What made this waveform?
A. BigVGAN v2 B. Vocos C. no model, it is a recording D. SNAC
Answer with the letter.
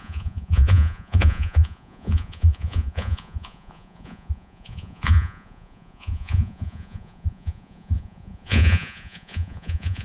B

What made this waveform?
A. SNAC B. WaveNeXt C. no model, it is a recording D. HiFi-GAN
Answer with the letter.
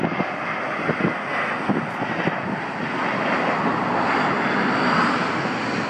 C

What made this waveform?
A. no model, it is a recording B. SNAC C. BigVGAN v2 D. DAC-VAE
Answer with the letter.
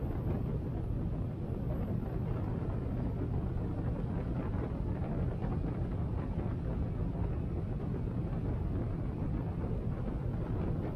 A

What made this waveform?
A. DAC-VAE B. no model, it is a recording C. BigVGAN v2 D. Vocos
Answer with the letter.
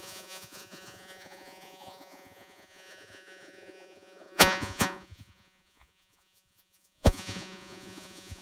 D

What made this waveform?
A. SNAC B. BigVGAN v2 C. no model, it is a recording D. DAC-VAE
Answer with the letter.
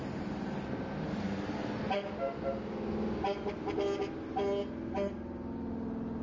C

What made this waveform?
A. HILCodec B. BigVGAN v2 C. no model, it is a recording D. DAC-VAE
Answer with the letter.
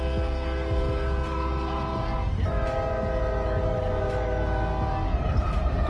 C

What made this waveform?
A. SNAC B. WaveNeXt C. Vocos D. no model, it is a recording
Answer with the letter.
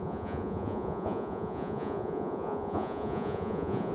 C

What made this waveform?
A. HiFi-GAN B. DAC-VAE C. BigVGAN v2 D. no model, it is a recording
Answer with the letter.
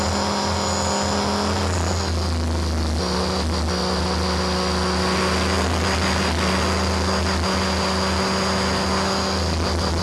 D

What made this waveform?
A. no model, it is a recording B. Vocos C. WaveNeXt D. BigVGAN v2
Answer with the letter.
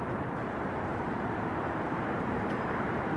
D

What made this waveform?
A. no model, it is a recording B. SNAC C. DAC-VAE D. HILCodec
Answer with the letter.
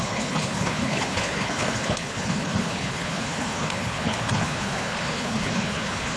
D